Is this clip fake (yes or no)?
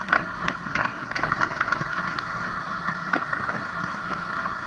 yes